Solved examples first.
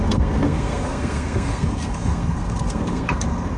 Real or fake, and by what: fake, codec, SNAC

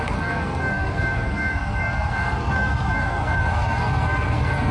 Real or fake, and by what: fake, codec, SNAC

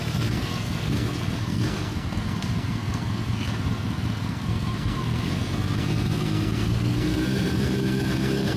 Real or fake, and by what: fake, codec, SNAC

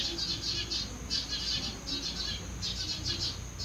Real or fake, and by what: real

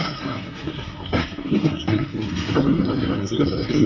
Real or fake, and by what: fake, codec, SNAC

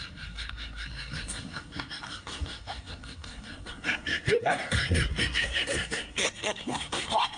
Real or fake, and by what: fake, codec, SNAC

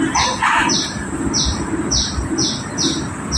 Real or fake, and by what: real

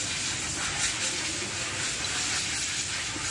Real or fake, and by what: real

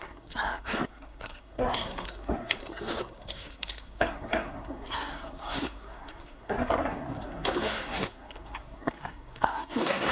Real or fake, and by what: fake, codec, SNAC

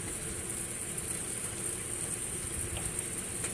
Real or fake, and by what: real